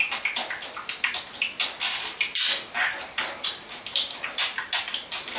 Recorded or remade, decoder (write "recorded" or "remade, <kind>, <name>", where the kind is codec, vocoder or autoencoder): remade, vocoder, BigVGAN v2